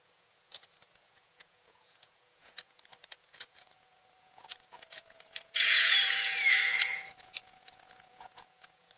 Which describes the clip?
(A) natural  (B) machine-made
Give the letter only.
B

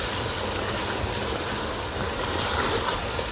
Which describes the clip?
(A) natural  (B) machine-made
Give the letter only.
A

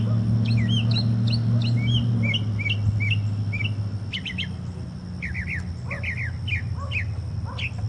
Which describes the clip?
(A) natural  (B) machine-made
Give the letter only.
A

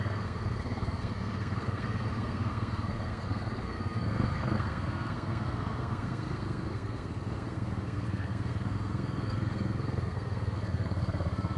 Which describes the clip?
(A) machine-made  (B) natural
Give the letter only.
A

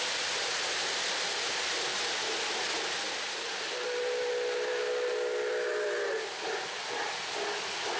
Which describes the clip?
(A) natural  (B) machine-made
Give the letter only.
A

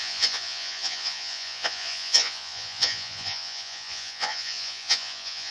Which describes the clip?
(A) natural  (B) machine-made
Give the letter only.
B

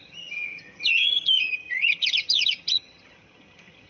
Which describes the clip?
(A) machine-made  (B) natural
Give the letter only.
A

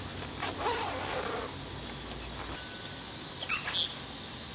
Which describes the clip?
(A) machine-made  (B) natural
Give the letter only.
B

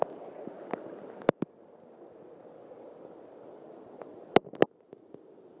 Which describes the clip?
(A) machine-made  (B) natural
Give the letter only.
B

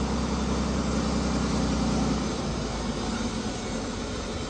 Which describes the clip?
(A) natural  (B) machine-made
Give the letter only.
A